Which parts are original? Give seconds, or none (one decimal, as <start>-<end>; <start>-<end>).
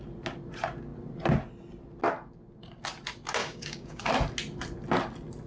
0.0-3.4; 4.1-5.5